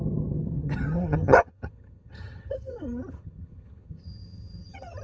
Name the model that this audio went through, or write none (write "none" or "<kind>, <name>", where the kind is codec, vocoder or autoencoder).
vocoder, HiFi-GAN